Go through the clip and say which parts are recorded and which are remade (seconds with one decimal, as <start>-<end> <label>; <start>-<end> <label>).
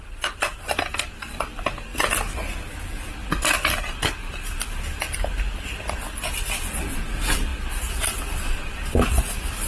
0.0-9.7 recorded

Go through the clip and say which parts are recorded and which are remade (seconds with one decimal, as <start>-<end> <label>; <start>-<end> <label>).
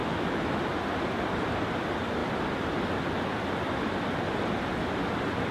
0.0-0.6 remade; 0.6-5.5 recorded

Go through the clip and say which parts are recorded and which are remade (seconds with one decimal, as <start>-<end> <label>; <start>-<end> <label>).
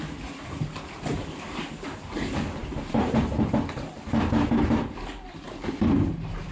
0.0-2.6 recorded; 2.6-6.5 remade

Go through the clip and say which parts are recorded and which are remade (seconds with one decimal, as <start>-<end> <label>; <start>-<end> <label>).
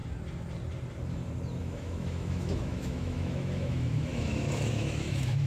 0.0-1.6 recorded; 1.6-5.5 remade